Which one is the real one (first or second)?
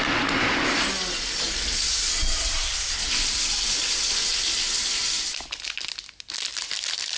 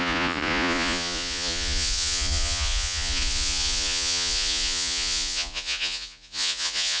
first